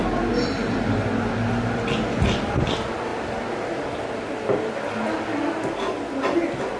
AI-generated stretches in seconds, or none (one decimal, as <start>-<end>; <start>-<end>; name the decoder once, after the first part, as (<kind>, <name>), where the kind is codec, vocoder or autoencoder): none